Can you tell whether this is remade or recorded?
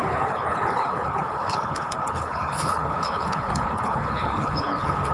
remade